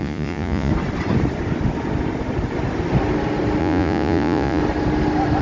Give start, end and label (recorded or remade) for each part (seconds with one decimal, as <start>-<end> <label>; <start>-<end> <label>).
0.0-0.7 remade; 0.7-3.6 recorded; 3.6-4.6 remade; 4.6-5.4 recorded